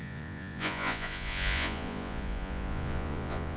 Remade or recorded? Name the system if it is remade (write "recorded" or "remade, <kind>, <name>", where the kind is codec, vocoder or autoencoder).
remade, vocoder, Vocos